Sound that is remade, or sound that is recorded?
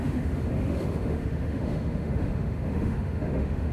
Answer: remade